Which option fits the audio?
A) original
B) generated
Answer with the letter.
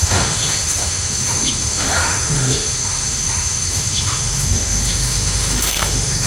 B